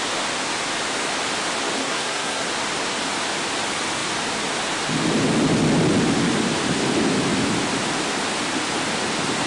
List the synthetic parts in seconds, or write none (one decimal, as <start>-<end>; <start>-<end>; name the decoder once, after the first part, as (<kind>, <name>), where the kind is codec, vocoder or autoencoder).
1.8-2.5 (codec, SNAC)